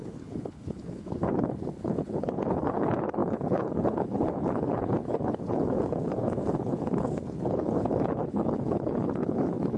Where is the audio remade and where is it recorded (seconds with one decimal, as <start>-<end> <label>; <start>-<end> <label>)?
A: 0.0-9.8 remade